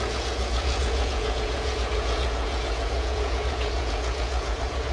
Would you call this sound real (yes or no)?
no